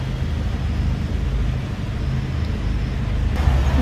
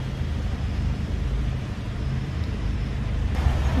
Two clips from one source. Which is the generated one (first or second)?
second